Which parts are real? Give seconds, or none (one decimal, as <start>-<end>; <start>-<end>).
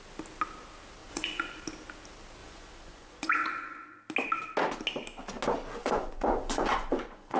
0.0-1.0; 1.6-2.4; 4.0-5.8